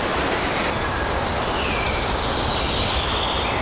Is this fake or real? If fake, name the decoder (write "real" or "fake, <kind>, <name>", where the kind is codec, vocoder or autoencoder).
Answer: real